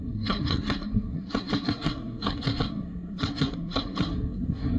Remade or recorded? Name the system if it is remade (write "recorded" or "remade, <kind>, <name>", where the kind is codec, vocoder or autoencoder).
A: remade, codec, SNAC